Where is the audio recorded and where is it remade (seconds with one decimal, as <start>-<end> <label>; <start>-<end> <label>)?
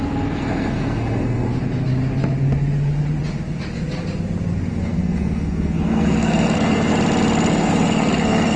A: 0.0-1.5 remade; 1.5-4.7 recorded; 4.7-6.9 remade; 6.9-7.5 recorded; 7.5-8.6 remade